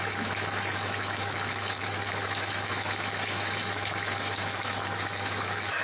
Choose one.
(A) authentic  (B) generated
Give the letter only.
B